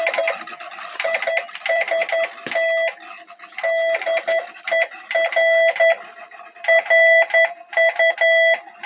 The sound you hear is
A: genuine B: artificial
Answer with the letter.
A